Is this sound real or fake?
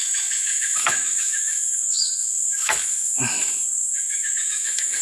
fake